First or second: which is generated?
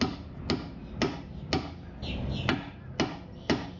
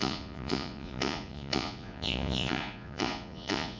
second